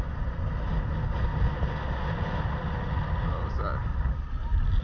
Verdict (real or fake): real